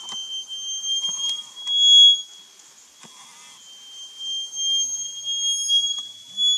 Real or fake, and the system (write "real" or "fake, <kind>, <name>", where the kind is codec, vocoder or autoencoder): real